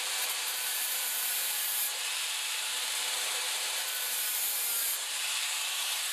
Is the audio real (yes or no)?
no